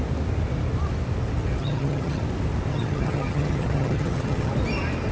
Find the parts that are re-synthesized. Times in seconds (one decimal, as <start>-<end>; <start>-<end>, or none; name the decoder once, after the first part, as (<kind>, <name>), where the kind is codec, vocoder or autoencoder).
1.6-2.2 (vocoder, HiFi-GAN); 2.7-4.5